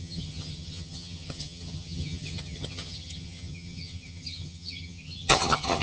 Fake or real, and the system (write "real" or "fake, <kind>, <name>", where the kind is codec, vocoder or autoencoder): fake, vocoder, HiFi-GAN